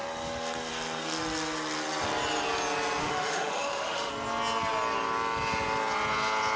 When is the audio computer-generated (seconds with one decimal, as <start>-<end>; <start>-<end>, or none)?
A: 3.0-4.1